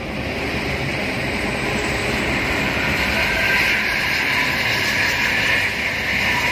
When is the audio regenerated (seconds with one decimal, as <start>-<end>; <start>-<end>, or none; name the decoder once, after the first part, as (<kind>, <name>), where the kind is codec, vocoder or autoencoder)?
0.9-3.1 (vocoder, BigVGAN v2); 3.9-5.2